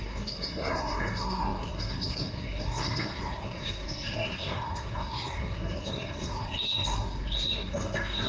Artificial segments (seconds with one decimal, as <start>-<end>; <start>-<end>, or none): 0.0-8.3